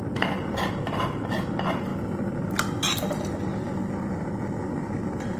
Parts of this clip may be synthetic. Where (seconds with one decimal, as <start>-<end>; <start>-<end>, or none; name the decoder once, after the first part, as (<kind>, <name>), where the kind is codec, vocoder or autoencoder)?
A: none